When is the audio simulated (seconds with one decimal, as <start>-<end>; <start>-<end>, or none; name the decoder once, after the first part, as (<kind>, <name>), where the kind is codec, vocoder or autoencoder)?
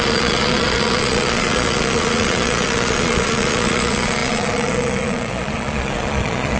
0.0-6.6 (vocoder, Vocos)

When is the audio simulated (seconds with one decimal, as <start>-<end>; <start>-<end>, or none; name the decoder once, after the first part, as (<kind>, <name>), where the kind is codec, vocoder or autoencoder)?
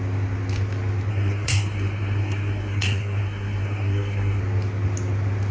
1.1-4.4 (codec, SNAC)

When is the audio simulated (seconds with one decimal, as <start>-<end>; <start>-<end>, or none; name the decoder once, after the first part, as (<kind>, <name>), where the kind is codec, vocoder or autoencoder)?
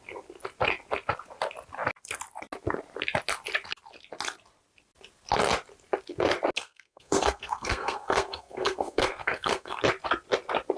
6.6-9.8 (codec, SNAC)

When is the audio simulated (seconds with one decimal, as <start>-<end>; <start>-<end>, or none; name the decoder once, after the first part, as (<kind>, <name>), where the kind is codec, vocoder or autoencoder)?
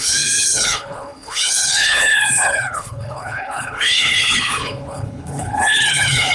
0.0-6.3 (codec, HILCodec)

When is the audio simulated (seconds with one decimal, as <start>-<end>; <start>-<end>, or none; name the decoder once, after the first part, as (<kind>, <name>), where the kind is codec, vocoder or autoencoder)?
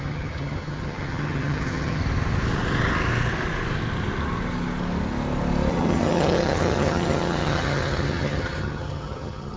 0.0-2.0 (vocoder, HiFi-GAN); 5.7-9.6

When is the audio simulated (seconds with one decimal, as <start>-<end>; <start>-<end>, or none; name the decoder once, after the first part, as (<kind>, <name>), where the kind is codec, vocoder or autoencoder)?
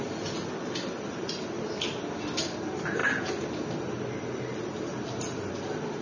none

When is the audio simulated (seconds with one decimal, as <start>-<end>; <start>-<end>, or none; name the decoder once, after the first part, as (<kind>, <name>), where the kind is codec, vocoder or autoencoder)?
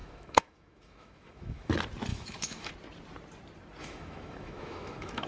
0.0-1.7 (autoencoder, DAC-VAE); 2.1-2.7; 3.8-5.3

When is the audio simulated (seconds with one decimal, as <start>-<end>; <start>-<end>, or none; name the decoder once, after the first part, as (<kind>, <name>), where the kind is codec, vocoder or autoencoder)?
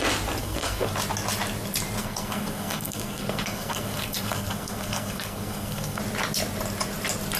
0.4-0.9 (codec, SNAC); 2.0-6.0